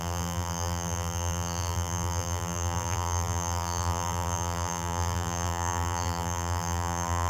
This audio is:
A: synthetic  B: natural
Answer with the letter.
A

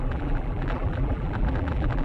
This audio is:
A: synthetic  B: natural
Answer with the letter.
A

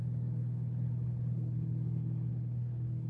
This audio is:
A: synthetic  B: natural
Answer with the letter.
A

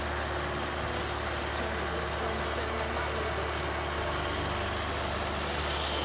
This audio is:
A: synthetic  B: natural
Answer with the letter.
B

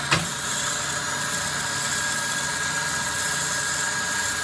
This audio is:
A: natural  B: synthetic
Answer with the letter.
A